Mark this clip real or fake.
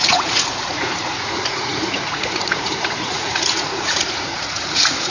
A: fake